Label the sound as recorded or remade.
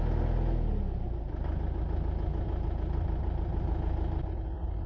recorded